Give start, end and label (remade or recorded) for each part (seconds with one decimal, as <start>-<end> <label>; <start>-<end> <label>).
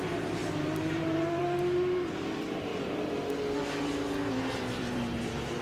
0.0-0.4 remade; 0.4-0.9 recorded; 0.9-1.4 remade; 1.4-2.1 recorded; 2.1-2.7 remade; 2.7-4.5 recorded; 4.5-5.6 remade